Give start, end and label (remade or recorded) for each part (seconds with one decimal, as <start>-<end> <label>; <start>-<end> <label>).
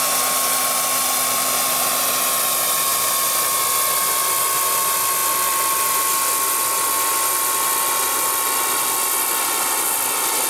0.0-10.5 recorded